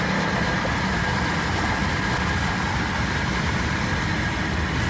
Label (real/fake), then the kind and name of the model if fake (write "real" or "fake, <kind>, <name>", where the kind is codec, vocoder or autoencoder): real